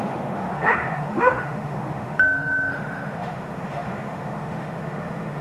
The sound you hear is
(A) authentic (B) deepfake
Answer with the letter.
B